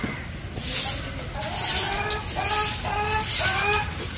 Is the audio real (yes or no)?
yes